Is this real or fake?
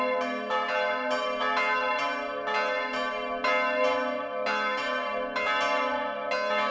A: real